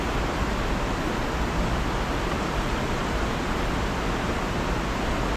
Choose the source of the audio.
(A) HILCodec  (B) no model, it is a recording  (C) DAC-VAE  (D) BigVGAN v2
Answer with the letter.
B